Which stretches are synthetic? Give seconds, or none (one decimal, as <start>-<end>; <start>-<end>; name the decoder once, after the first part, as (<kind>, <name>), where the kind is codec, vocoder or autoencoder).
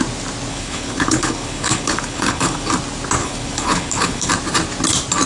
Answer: 0.5-2.7 (codec, HILCodec); 3.2-4.3